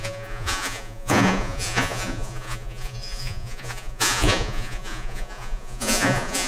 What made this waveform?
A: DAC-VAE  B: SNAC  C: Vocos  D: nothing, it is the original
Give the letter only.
C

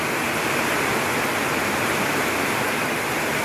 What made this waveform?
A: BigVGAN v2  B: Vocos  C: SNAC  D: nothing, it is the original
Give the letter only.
A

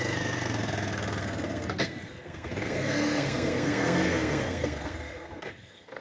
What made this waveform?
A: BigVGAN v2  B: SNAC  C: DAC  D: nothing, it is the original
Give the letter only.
B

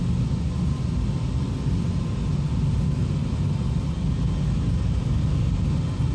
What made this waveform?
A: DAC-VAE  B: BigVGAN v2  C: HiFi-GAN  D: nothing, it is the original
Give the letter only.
D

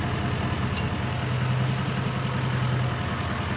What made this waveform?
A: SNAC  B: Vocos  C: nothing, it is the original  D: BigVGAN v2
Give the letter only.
C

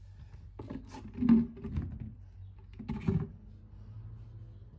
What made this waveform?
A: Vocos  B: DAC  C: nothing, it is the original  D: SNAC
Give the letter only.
C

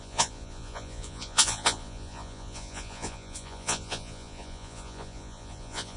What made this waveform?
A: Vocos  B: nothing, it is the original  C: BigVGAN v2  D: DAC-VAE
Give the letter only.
A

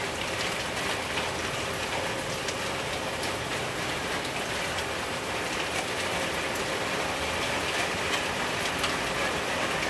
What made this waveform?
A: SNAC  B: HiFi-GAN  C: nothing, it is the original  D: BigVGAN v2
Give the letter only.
C